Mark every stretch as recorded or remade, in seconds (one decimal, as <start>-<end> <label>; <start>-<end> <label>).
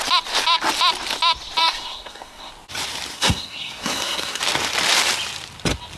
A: 0.0-1.6 recorded; 1.6-2.5 remade; 2.5-3.1 recorded; 3.1-4.4 remade; 4.4-6.0 recorded